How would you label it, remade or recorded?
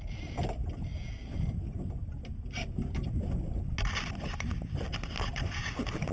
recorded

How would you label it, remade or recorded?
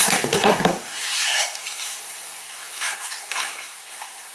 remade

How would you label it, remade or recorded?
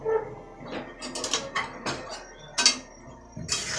recorded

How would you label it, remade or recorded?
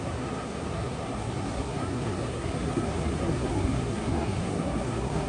remade